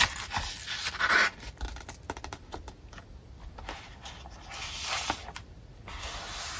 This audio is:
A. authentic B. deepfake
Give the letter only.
A